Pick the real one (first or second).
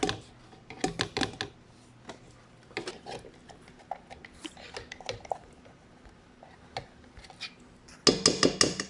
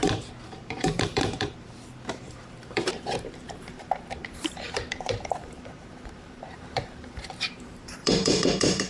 first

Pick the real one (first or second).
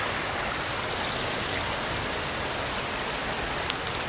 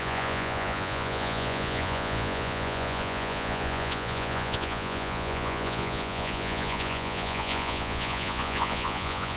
first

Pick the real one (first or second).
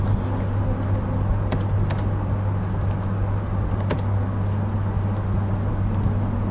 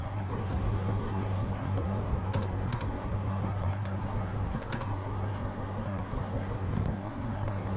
first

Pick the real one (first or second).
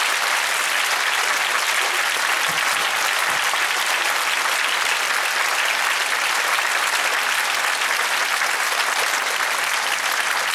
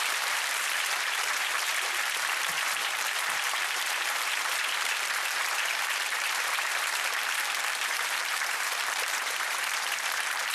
first